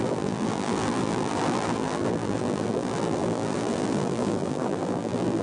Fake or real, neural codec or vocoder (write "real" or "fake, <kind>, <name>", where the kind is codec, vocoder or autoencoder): fake, vocoder, BigVGAN v2